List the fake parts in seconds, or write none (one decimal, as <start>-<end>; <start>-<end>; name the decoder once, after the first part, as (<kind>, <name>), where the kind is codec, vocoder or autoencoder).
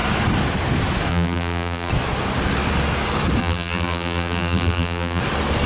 1.1-1.9 (vocoder, BigVGAN v2); 3.4-5.2